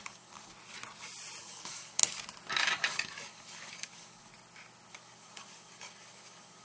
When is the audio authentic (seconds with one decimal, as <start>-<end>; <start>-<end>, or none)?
0.5-1.4; 2.0-2.6; 4.3-4.9